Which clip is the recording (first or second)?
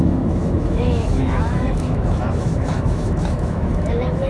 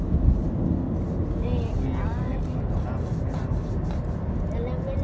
second